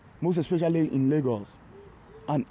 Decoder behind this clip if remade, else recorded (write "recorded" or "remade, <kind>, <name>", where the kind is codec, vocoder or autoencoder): recorded